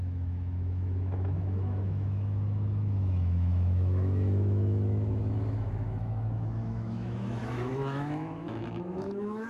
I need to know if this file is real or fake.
fake